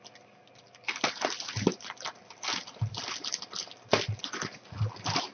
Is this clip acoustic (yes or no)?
yes